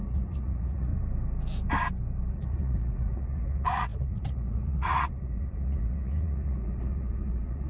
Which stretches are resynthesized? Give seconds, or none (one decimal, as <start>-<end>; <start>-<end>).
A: 0.0-0.9; 2.3-7.7